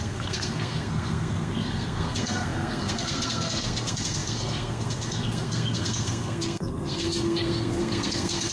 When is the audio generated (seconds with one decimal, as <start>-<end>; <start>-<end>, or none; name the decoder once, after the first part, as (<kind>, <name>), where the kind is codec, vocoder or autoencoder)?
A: 0.0-8.5 (codec, SNAC)